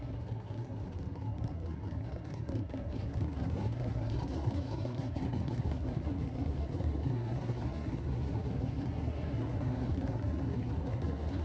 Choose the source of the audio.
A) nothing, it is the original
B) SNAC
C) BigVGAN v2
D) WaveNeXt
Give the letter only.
B